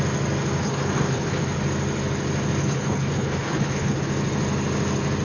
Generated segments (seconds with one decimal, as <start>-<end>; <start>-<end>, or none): 0.6-1.4; 2.6-4.1